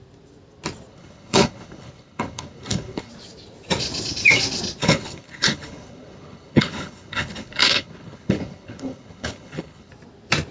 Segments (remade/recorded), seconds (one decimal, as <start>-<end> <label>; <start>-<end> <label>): 0.0-0.9 recorded; 0.9-3.1 remade; 3.1-4.8 recorded; 4.8-9.9 remade; 9.9-10.5 recorded

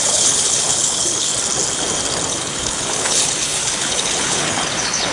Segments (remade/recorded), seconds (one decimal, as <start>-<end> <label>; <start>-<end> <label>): 0.0-1.3 remade; 1.3-2.3 recorded; 2.3-5.1 remade

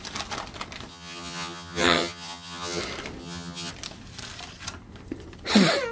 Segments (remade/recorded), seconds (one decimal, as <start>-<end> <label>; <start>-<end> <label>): 0.0-0.9 recorded; 0.9-2.8 remade; 2.8-3.2 recorded; 3.2-3.7 remade; 3.7-5.9 recorded

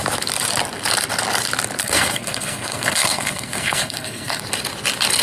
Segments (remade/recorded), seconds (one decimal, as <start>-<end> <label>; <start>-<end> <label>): 0.0-1.8 recorded; 1.8-4.4 remade; 4.4-5.2 recorded

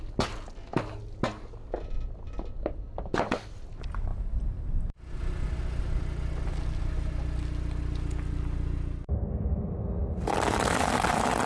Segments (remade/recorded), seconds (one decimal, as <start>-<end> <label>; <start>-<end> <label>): 0.0-11.5 recorded